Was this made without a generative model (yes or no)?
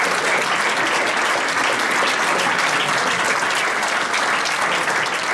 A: yes